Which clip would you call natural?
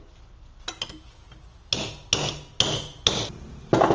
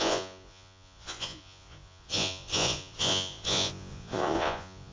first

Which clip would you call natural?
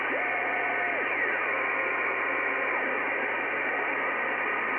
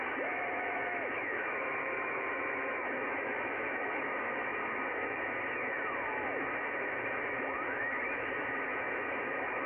first